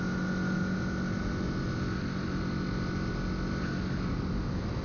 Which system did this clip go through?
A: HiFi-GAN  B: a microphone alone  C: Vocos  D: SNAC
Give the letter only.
B